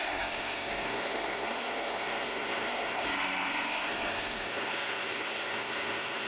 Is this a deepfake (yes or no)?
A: yes